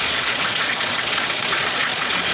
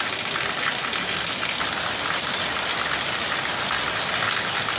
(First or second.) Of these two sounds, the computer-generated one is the first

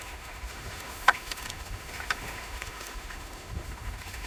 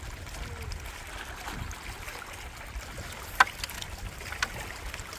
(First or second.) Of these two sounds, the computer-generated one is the first